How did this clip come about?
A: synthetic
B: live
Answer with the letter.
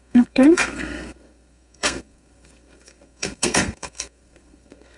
A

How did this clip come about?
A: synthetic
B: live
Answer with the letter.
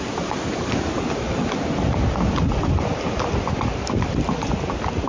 B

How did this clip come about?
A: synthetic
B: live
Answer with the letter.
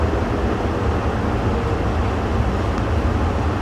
B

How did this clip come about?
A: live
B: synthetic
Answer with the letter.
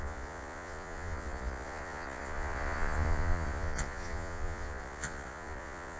B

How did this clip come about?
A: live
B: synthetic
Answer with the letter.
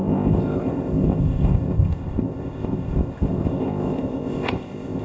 B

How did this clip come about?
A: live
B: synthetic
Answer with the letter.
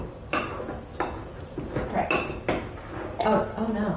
A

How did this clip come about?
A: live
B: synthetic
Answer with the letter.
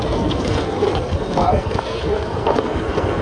B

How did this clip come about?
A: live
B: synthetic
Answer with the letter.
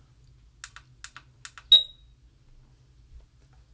A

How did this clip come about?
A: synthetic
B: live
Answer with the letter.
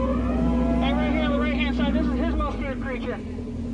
B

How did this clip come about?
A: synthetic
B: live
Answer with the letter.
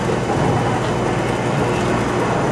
B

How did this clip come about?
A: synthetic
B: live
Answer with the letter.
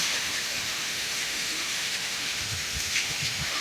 A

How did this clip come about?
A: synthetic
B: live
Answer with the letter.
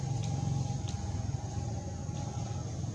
B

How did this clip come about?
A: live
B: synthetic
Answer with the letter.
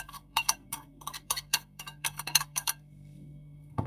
B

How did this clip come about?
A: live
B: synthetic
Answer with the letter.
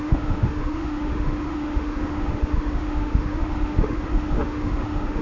B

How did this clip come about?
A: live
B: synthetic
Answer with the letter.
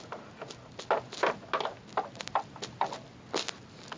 A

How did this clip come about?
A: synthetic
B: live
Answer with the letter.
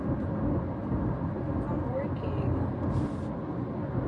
B